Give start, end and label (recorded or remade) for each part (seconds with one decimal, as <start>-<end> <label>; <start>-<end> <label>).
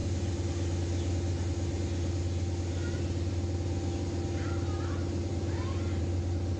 0.0-6.6 recorded